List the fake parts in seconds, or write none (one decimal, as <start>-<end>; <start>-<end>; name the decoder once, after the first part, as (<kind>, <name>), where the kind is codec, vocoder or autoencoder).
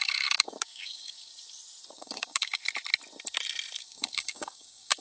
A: 0.0-1.3 (codec, DAC); 1.9-2.6; 3.8-5.0